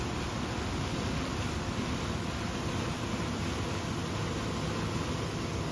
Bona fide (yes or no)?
yes